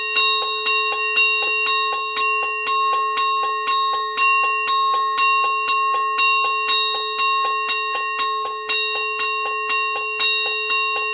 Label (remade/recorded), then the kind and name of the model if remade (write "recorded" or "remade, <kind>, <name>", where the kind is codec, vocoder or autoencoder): recorded